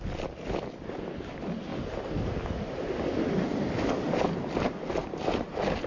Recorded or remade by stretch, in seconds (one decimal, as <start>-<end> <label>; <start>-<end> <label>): 0.0-5.9 recorded